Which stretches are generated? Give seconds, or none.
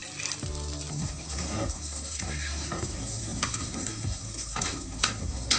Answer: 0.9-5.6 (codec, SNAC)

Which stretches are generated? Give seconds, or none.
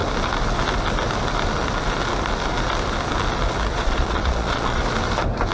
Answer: 3.7-4.8 (vocoder, Vocos)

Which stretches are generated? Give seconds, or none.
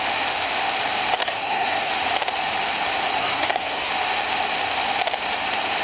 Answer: 1.2-1.9 (codec, SNAC); 3.2-3.9